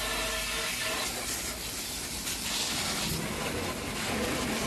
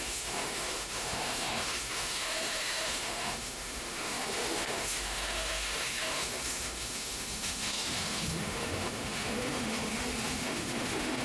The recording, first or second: first